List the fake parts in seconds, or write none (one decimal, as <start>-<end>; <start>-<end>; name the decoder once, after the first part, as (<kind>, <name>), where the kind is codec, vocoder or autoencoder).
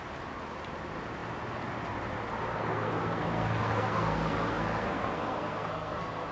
2.5-6.3 (codec, SNAC)